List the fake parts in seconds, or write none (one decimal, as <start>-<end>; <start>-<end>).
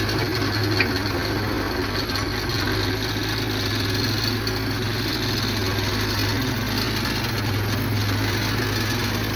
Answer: none